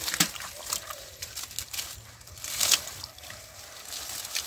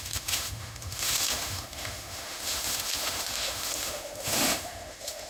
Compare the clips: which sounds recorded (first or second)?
first